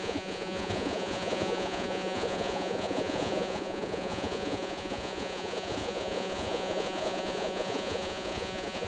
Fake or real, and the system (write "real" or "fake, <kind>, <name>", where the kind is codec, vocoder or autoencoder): fake, vocoder, Vocos